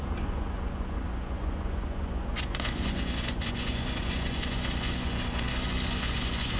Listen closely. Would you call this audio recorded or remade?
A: remade